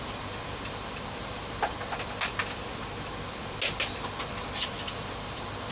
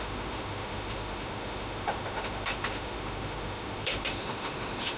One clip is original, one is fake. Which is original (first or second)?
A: first